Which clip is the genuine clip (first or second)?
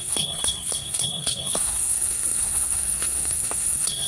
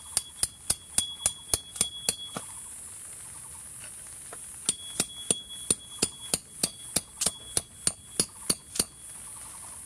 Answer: second